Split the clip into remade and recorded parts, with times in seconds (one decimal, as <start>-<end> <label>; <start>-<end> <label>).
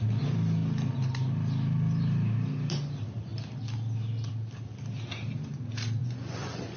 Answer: 0.0-6.0 recorded; 6.0-6.8 remade